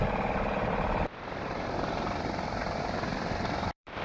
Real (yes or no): no